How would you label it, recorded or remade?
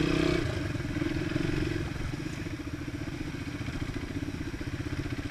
remade